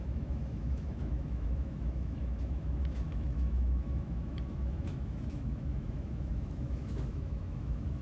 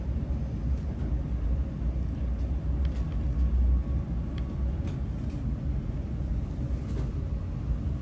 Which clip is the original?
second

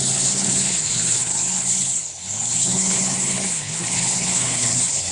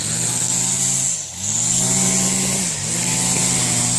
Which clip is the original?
second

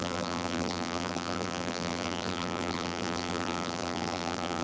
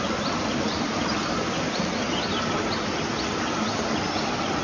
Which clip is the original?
second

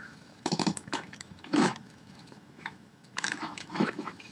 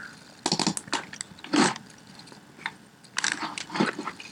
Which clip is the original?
second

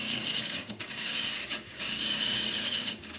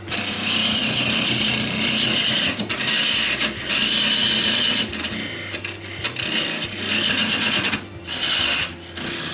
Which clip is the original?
second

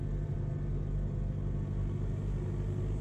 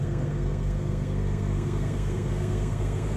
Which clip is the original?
first